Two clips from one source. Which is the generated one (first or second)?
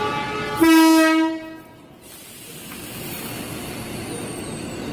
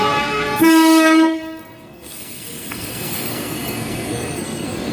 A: second